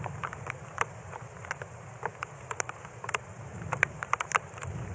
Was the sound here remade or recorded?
remade